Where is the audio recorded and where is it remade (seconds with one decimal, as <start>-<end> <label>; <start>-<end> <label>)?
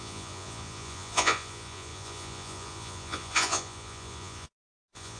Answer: 0.0-5.2 remade